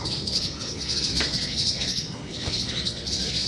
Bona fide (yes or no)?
no